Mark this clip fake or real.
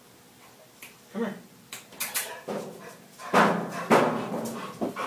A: real